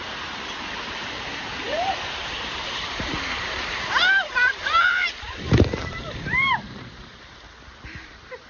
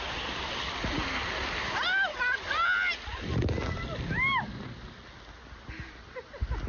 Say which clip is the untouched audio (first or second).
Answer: second